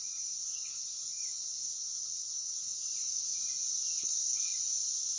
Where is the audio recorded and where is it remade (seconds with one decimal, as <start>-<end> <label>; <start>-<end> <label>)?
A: 0.0-2.9 remade; 2.9-4.0 recorded; 4.0-4.5 remade; 4.5-5.2 recorded